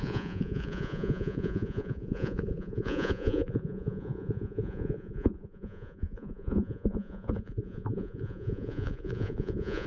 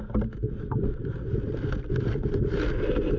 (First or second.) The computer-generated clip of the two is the first